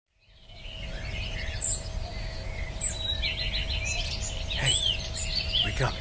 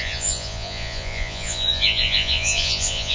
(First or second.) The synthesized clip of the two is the second